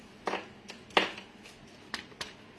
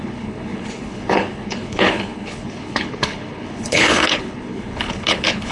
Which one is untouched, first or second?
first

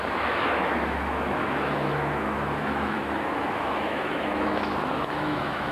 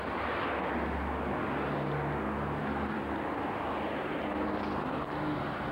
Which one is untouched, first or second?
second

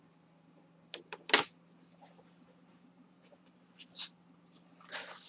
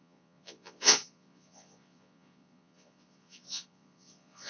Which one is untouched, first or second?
first